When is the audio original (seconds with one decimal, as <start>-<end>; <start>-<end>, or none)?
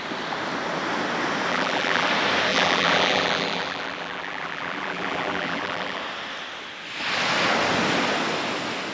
0.0-1.5; 2.1-2.5; 6.0-8.9